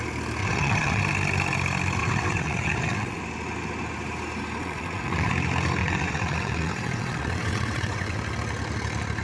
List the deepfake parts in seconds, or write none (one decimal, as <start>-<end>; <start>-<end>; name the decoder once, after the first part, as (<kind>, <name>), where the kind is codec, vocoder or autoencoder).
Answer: 0.4-1.0 (vocoder, WaveNeXt); 2.0-3.2; 4.6-5.3; 5.8-8.2

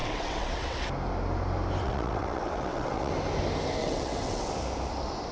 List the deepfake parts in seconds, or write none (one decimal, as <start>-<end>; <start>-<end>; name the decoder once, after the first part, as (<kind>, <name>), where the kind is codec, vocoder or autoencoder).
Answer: 0.0-0.9 (vocoder, WaveNeXt); 1.8-3.1; 3.8-4.5

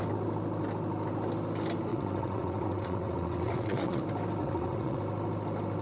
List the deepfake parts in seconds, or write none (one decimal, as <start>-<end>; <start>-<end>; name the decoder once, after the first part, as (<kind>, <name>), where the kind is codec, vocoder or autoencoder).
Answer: 1.9-4.0 (vocoder, WaveNeXt); 4.4-5.0

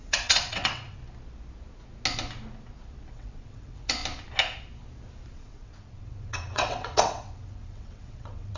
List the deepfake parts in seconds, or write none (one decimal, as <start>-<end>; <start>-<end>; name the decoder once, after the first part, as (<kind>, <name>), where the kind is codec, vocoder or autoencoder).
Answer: 0.0-1.0 (vocoder, WaveNeXt); 3.1-4.0; 5.3-8.6

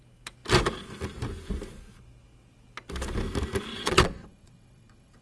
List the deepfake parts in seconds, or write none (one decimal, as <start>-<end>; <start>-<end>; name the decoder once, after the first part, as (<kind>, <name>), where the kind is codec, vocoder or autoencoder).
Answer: 3.7-5.2 (vocoder, WaveNeXt)